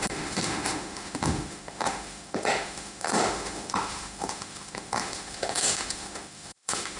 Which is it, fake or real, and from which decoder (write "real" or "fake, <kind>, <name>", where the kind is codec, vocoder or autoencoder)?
fake, autoencoder, DAC-VAE